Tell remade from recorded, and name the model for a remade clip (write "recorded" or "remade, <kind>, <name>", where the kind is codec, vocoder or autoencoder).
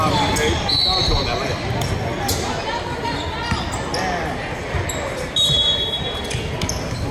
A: recorded